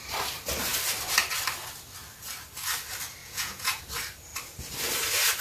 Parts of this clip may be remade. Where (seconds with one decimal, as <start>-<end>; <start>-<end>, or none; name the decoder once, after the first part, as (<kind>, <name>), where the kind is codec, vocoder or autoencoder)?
3.2-3.8 (vocoder, Vocos)